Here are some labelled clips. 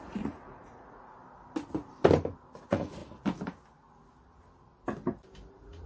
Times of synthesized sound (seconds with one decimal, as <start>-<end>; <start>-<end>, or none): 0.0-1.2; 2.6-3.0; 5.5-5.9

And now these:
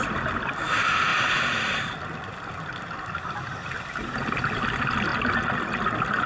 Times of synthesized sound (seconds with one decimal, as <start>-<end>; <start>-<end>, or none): none

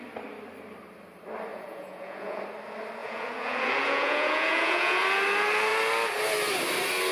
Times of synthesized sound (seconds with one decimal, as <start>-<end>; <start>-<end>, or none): 1.5-2.4; 3.0-5.0

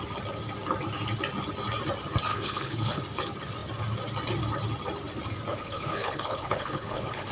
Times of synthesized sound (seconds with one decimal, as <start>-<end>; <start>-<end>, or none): 2.3-3.0; 5.5-7.3

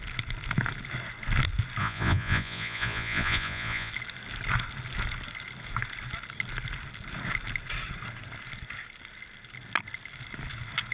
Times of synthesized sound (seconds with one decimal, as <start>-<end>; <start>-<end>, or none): 1.8-3.9

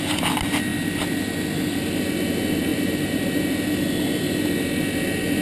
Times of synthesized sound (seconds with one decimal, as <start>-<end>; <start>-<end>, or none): 2.7-3.4

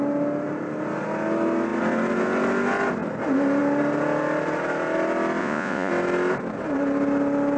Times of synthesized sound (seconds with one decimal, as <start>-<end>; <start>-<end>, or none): 5.4-5.9